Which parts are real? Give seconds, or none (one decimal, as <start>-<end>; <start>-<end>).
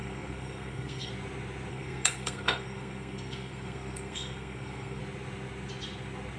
1.1-1.7; 5.0-6.4